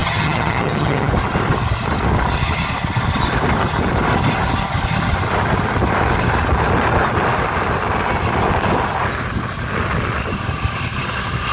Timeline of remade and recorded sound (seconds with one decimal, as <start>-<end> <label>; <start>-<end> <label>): 0.0-1.1 remade; 1.1-11.5 recorded